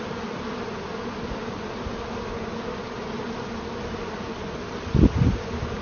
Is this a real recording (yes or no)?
yes